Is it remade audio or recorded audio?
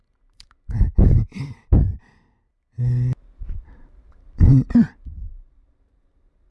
remade